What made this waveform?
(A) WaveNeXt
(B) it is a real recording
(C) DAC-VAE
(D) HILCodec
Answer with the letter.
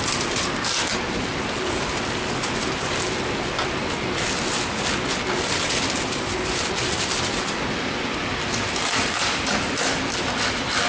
B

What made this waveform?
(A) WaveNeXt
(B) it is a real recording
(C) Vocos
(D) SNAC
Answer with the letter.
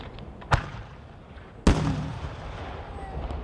B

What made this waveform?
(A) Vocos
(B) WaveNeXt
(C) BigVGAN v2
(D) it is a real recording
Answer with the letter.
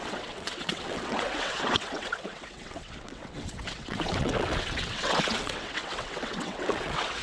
B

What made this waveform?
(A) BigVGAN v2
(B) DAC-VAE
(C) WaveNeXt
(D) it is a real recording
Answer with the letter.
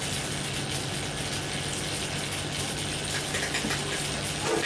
D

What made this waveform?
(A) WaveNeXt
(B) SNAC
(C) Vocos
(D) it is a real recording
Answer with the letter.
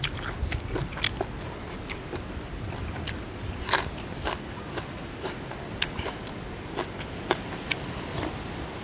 D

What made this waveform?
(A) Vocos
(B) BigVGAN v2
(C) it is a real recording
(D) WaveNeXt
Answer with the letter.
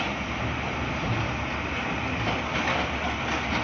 C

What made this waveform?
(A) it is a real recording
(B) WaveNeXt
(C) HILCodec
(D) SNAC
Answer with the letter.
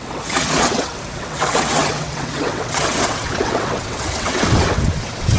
B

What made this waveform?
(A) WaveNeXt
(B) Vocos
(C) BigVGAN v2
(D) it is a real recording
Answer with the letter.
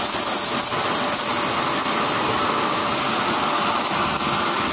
D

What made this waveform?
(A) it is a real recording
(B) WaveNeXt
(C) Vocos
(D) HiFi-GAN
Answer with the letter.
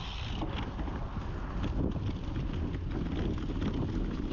A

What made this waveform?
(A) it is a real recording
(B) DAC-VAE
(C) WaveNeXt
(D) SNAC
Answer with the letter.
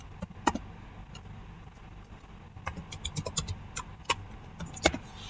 A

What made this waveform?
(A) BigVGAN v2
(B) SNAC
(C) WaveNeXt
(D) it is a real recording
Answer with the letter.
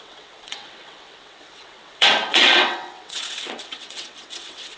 C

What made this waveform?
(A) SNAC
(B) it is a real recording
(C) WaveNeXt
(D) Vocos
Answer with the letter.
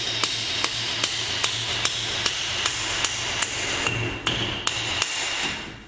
B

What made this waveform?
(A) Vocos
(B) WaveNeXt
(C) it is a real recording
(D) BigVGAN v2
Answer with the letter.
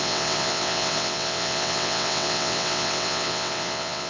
B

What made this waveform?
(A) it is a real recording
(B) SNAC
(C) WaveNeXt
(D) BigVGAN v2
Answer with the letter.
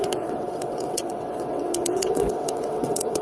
C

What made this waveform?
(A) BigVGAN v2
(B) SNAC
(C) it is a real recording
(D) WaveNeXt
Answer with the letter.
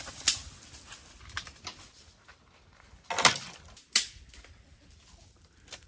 C